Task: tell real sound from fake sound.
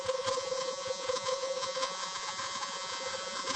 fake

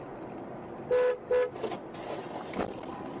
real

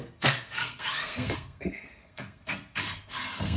fake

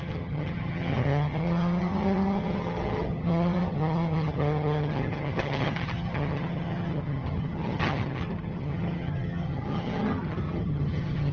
fake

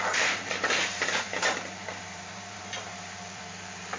fake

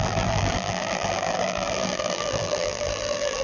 fake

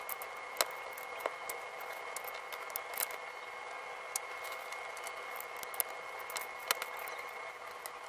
real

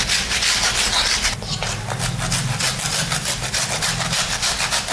real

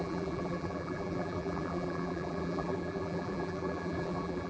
fake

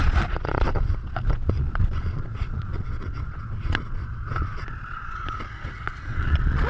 fake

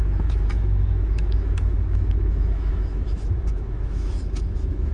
fake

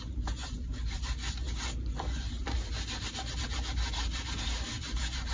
fake